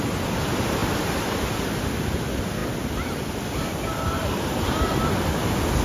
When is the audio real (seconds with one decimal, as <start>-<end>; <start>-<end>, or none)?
0.0-0.8; 2.2-2.6; 4.9-5.8